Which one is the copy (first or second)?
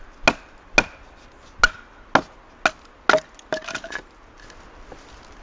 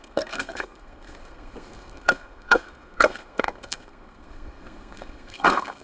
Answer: second